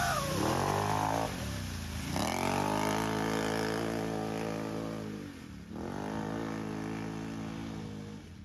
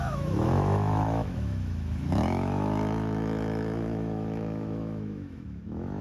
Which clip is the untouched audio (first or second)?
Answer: first